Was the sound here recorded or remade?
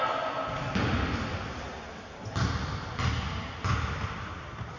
recorded